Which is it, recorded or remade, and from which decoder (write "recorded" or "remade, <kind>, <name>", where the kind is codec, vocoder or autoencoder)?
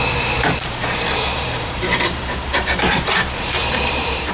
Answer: remade, vocoder, BigVGAN v2